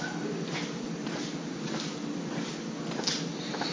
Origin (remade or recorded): recorded